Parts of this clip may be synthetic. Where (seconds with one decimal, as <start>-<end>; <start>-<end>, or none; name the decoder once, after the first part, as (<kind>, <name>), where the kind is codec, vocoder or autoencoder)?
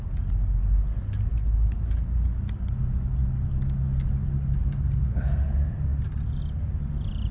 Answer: none